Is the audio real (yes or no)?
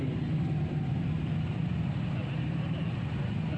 yes